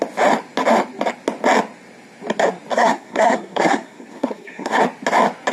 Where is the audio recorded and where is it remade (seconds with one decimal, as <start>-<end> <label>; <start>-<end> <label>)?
0.0-2.7 recorded; 2.7-4.8 remade; 4.8-5.5 recorded